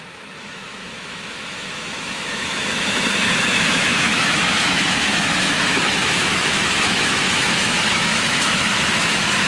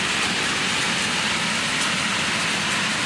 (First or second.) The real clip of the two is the second